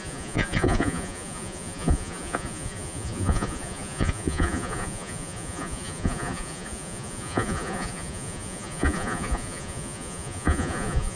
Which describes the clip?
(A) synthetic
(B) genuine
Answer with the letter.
A